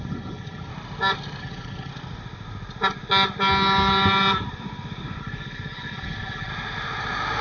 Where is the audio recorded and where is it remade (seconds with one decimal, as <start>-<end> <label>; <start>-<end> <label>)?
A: 0.0-0.7 remade; 0.7-1.4 recorded; 1.4-1.9 remade; 1.9-5.2 recorded; 5.2-6.5 remade; 6.5-7.4 recorded

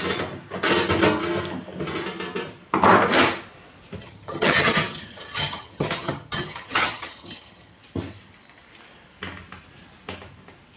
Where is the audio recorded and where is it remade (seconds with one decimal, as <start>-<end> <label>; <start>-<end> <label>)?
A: 0.0-4.0 recorded; 4.0-7.8 remade; 7.8-10.8 recorded